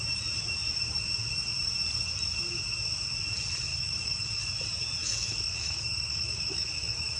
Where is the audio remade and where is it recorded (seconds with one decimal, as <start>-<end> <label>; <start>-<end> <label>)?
0.0-3.7 recorded; 3.7-4.3 remade; 4.3-5.0 recorded; 5.0-7.2 remade